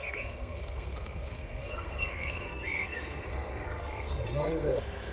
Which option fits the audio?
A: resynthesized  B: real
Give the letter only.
A